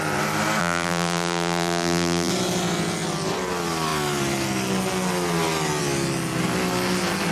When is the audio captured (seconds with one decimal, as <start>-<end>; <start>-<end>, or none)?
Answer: 0.0-0.6; 2.3-7.3